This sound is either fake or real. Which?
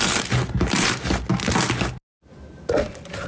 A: real